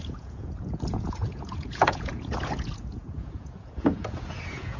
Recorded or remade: remade